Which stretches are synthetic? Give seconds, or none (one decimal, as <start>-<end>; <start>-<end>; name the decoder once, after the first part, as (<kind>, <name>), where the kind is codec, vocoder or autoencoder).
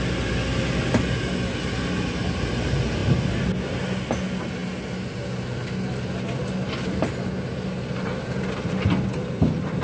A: none